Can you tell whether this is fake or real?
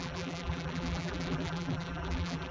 fake